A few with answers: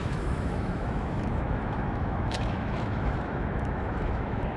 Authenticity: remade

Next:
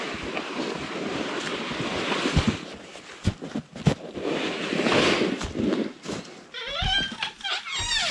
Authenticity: recorded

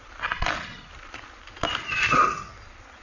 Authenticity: recorded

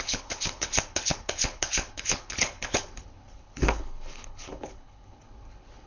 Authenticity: remade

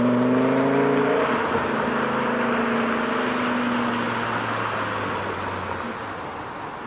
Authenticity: recorded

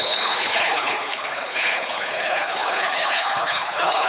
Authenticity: remade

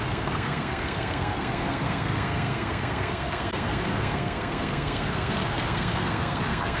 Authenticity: remade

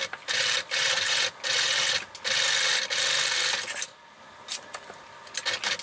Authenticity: recorded